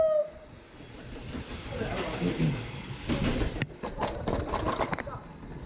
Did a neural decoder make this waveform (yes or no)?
no